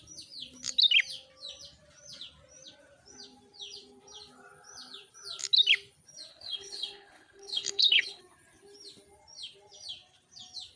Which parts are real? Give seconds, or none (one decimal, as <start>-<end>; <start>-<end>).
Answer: 0.0-6.3; 8.2-10.8